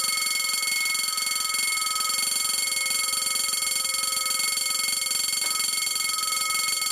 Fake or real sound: real